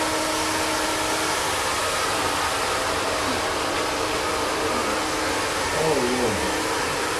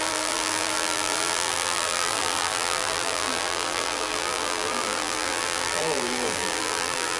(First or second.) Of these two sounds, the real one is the first